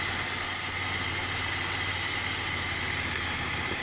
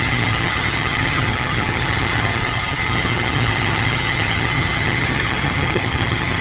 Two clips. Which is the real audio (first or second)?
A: first